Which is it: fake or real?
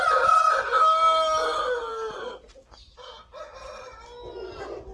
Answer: real